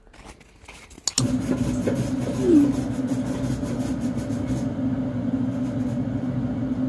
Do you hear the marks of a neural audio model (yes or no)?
no